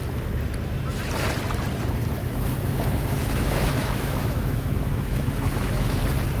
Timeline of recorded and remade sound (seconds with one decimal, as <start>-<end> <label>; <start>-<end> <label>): 0.0-2.2 recorded; 2.2-6.0 remade; 6.0-6.4 recorded